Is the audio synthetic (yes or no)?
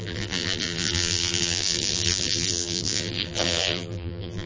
yes